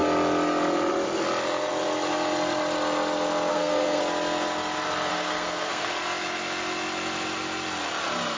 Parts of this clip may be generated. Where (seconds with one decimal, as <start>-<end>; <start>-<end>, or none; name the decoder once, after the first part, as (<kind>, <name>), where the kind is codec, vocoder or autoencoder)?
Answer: 3.5-4.0 (codec, SNAC); 5.1-5.9